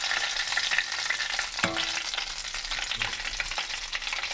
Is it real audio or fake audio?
real